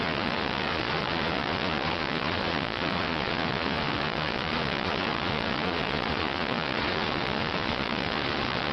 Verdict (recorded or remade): remade